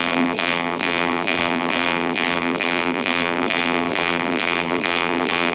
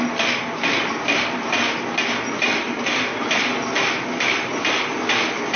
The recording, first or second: second